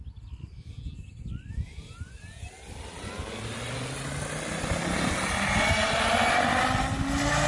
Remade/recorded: recorded